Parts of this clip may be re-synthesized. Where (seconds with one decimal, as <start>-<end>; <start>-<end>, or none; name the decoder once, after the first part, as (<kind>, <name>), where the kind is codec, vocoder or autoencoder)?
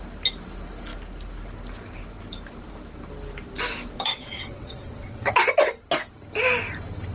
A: 4.1-5.3 (vocoder, WaveNeXt)